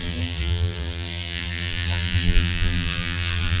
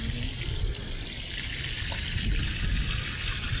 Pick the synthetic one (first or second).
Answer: first